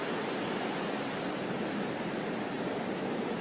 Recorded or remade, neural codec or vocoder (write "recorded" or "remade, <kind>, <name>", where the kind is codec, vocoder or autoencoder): recorded